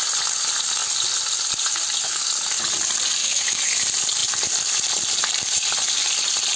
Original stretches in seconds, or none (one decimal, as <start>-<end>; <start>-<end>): 0.0-2.0; 2.7-3.2; 3.7-6.6